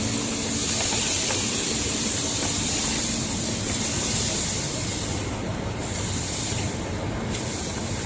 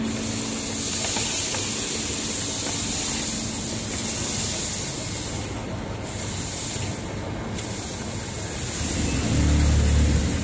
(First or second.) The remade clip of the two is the first